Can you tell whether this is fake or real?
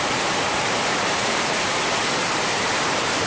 fake